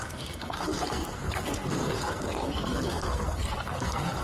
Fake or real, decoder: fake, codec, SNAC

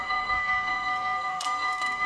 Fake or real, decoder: fake, codec, SNAC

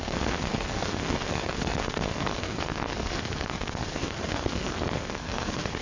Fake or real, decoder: fake, codec, SNAC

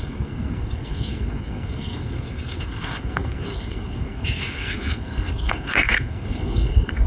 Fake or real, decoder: fake, codec, SNAC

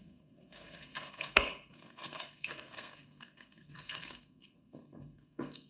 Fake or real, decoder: fake, codec, SNAC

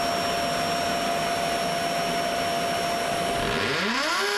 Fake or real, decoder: real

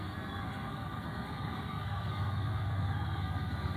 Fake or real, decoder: fake, codec, SNAC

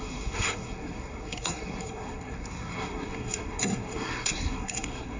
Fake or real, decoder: fake, codec, SNAC